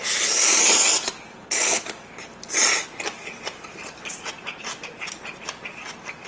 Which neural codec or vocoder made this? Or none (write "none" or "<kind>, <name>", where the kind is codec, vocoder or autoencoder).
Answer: none